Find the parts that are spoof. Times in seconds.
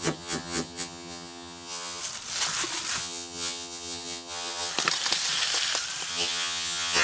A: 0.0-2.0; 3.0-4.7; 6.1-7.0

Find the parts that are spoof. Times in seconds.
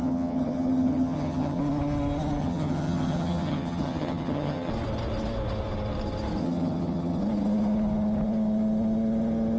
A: 0.0-1.6; 2.4-4.7; 6.4-7.2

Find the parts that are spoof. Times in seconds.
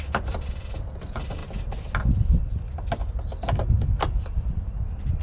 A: none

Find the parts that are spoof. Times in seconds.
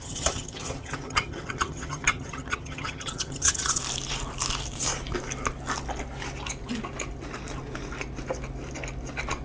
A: 0.0-3.8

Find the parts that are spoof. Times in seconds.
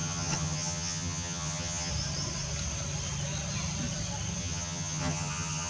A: 0.0-1.9; 4.4-5.7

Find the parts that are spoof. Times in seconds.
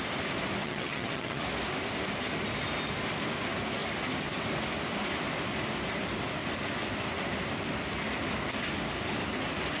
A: 0.6-1.4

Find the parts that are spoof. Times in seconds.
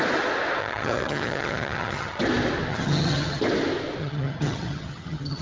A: 0.6-2.2; 2.7-3.4; 4.0-5.4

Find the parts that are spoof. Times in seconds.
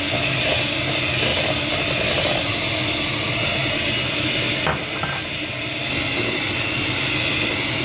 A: none